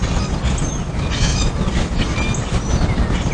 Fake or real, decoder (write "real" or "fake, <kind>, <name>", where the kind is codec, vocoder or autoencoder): real